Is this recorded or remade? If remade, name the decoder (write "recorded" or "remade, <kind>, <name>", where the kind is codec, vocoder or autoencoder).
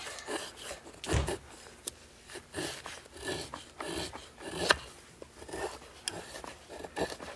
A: recorded